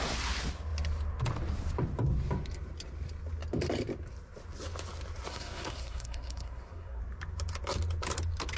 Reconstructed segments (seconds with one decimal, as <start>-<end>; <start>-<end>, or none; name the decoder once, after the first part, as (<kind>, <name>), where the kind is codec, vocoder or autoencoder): 5.3-7.0 (codec, SNAC)